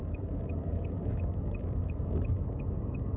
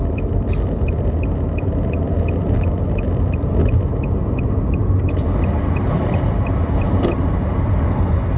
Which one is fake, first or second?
first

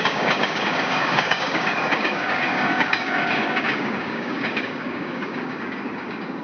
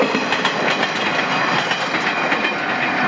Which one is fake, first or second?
first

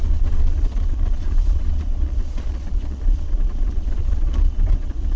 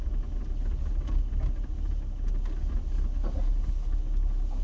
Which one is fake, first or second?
first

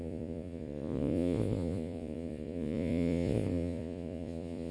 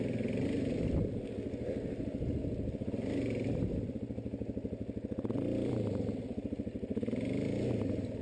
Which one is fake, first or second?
first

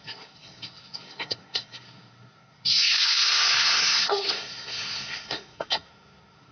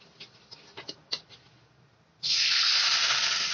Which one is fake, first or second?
first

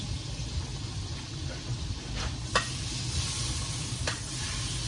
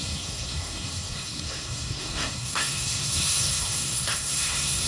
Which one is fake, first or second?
second